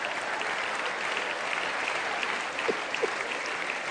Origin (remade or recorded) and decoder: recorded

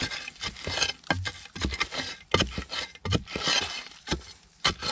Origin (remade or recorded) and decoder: recorded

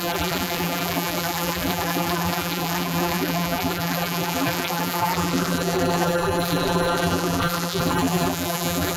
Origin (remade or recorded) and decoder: remade, vocoder, BigVGAN v2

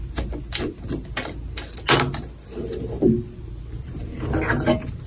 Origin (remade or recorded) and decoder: recorded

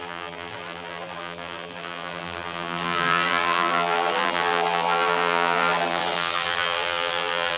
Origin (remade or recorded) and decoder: remade, vocoder, BigVGAN v2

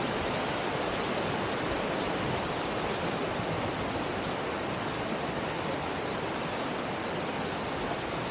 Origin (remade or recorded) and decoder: recorded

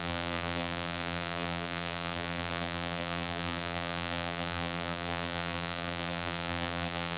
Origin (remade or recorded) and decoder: remade, vocoder, BigVGAN v2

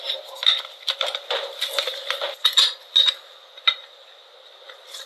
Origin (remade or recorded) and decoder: recorded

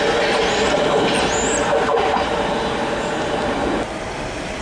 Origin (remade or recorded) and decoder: recorded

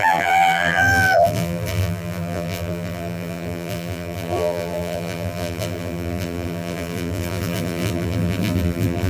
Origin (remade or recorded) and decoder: remade, vocoder, BigVGAN v2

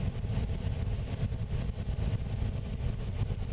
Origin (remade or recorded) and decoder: remade, vocoder, BigVGAN v2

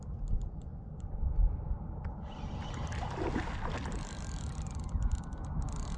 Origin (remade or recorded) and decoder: recorded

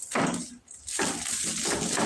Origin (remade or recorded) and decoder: recorded